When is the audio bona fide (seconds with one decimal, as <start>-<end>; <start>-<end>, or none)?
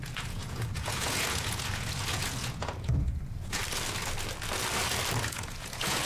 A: 3.6-5.2